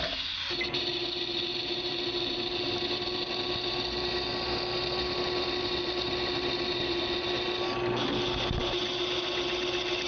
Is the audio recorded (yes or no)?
yes